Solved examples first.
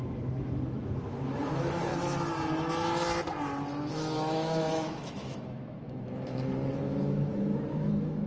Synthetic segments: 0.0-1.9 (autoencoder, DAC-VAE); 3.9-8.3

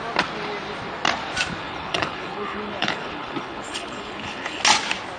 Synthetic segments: 1.6-4.6 (codec, HILCodec)

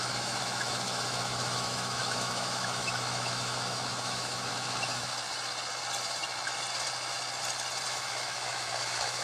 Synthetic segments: 0.0-5.1 (autoencoder, DAC-VAE); 7.9-9.2

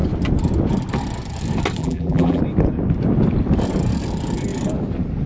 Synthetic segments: 1.8-2.4 (vocoder, BigVGAN v2)

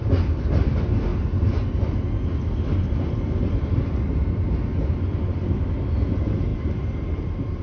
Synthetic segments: 6.5-7.6 (vocoder, BigVGAN v2)

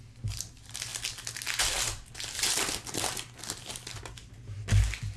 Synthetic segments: none

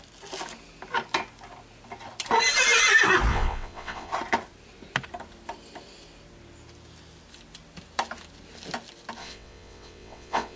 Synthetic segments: 3.3-4.1 (vocoder, WaveNeXt); 9.2-10.6

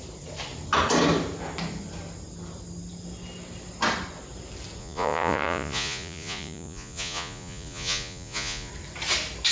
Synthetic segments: 4.8-8.7 (vocoder, Vocos)